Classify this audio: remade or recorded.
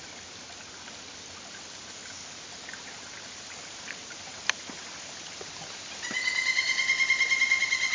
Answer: recorded